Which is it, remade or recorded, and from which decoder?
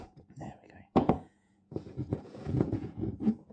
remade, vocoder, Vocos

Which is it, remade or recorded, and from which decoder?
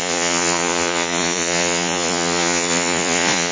remade, vocoder, Vocos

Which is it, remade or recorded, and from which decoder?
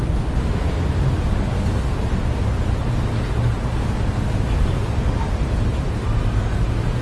recorded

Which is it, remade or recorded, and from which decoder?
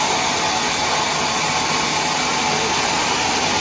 recorded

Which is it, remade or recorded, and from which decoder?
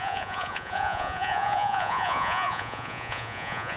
remade, vocoder, Vocos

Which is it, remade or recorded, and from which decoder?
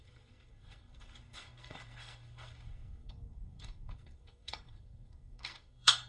remade, codec, SNAC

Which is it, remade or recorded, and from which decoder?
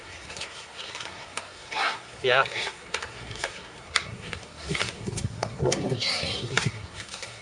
remade, codec, SNAC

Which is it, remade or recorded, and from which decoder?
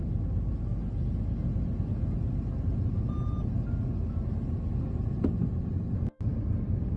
recorded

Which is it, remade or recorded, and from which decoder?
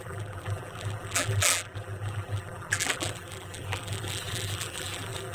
remade, vocoder, BigVGAN v2